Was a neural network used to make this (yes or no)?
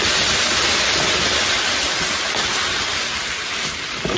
no